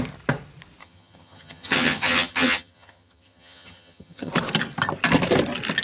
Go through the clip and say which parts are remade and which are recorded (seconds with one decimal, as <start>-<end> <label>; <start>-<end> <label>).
0.0-0.8 recorded; 0.8-4.3 remade; 4.3-5.8 recorded